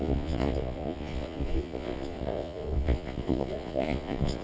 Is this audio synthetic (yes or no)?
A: yes